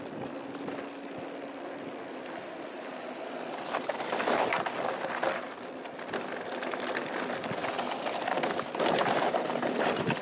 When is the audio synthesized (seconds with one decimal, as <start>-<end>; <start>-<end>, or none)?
none